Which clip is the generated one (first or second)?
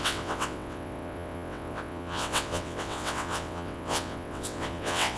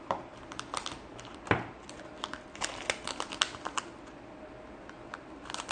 first